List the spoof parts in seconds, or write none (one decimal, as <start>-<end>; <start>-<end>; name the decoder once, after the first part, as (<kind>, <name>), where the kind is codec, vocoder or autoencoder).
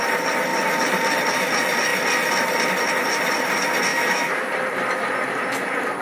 3.9-4.5 (autoencoder, DAC-VAE)